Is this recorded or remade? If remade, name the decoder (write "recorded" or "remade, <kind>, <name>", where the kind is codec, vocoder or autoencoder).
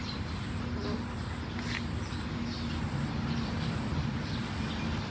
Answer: recorded